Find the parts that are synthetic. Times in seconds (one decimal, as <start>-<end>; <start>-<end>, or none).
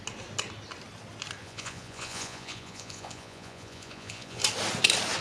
1.4-4.4